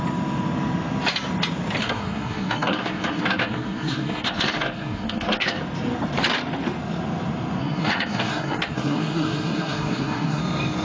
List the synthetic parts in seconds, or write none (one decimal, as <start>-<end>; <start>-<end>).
1.8-5.6; 7.6-10.4